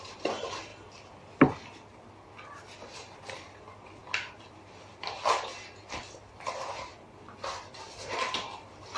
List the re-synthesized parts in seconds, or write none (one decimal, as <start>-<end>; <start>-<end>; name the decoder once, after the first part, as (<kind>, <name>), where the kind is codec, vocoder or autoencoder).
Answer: 0.0-0.7 (vocoder, BigVGAN v2); 2.6-4.0; 6.0-9.0